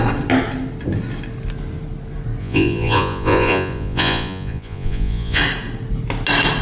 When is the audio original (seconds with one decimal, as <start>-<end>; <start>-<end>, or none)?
0.0-2.4; 5.4-6.6